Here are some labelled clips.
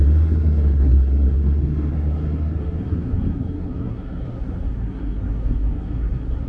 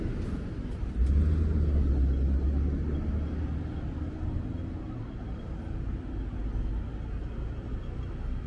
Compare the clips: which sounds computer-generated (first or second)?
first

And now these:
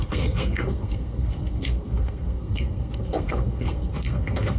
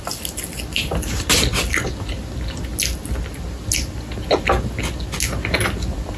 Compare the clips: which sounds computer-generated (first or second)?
first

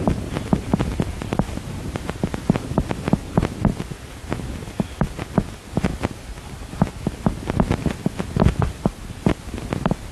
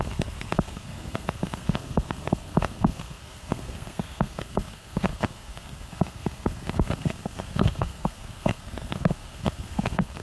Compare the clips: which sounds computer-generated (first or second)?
second